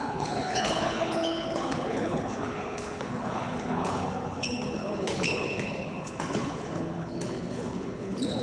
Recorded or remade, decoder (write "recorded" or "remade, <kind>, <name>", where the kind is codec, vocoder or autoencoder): remade, codec, HILCodec